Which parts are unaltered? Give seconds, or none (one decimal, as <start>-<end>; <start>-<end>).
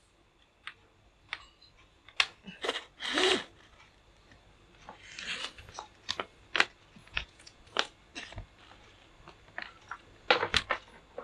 0.0-7.0; 7.6-11.2